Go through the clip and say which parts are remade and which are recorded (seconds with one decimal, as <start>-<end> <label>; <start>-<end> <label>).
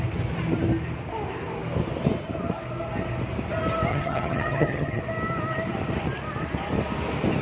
0.0-3.9 recorded; 3.9-5.0 remade; 5.0-7.4 recorded